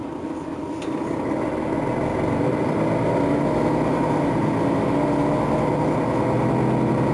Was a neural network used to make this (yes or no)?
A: no